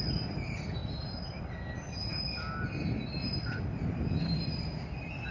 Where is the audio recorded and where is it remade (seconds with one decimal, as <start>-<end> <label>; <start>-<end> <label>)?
0.0-0.8 recorded; 0.8-1.4 remade; 1.4-5.3 recorded